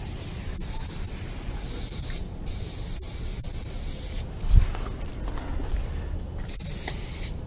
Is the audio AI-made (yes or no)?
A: no